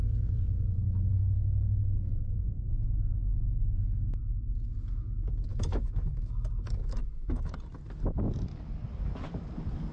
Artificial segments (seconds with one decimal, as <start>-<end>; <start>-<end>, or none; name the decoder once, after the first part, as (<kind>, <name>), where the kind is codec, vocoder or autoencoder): 5.5-7.5 (autoencoder, DAC-VAE)